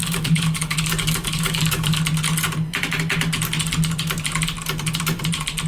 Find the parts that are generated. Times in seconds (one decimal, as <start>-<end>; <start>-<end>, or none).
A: 0.0-2.0